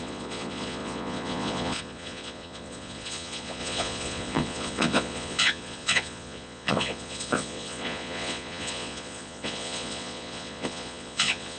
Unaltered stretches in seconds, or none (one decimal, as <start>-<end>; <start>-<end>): none